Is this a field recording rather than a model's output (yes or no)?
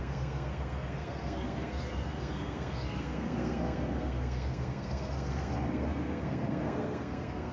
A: no